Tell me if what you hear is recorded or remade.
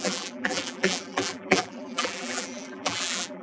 remade